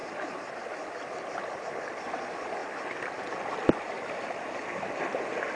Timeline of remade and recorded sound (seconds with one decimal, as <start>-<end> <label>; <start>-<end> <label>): 0.0-0.6 remade; 0.6-5.5 recorded